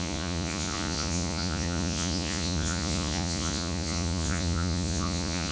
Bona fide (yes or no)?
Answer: no